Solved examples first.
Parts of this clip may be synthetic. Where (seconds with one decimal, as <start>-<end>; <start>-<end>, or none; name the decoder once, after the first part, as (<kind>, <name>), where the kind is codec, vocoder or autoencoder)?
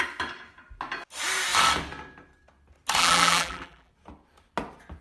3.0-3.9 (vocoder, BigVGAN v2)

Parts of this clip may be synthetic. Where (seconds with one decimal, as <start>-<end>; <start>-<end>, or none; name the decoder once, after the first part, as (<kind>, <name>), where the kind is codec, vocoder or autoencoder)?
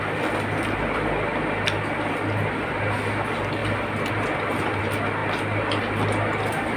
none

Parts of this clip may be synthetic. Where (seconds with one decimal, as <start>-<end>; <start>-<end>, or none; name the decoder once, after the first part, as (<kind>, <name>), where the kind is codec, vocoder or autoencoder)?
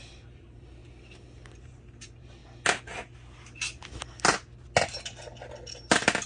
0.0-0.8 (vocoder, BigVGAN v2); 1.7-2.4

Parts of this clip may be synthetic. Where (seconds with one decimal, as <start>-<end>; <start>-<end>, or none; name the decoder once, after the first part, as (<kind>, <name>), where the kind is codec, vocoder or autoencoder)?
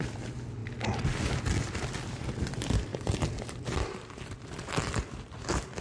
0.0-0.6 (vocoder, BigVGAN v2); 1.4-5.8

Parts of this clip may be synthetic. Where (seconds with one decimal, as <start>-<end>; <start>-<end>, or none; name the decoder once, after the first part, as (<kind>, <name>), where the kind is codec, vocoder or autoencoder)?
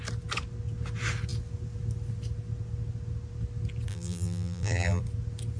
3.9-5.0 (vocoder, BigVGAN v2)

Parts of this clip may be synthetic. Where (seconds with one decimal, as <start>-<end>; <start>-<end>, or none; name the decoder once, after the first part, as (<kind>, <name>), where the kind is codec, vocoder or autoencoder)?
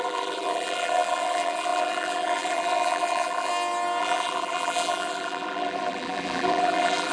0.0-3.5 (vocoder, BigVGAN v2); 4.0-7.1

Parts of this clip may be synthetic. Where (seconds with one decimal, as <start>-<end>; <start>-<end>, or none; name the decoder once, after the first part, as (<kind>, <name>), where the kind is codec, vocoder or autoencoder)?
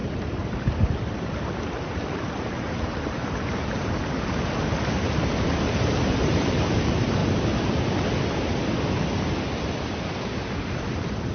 1.2-7.2 (vocoder, BigVGAN v2); 10.7-11.3